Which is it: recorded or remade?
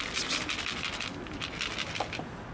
recorded